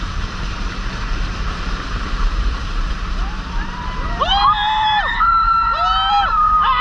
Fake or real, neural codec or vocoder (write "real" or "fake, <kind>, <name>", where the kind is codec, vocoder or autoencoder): fake, vocoder, BigVGAN v2